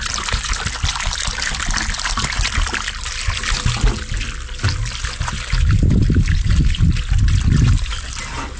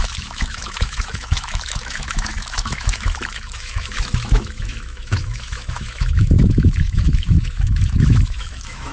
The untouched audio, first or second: first